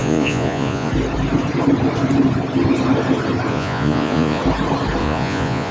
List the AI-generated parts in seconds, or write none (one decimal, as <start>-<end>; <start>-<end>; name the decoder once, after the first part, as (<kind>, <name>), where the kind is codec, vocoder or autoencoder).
0.0-0.9 (vocoder, Vocos); 3.5-4.4; 5.0-5.7